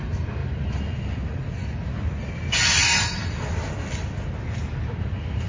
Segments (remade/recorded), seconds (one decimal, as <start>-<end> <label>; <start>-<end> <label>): 0.0-5.5 recorded